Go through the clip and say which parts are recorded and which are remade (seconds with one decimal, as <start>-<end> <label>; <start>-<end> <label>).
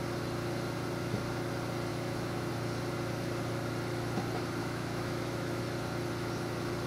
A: 0.0-1.9 recorded; 1.9-2.5 remade; 2.5-4.6 recorded; 4.6-5.6 remade; 5.6-6.9 recorded